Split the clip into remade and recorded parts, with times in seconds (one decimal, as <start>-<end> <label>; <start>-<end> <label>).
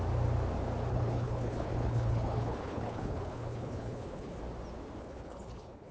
0.0-0.9 recorded; 0.9-4.4 remade; 4.4-5.0 recorded; 5.0-5.9 remade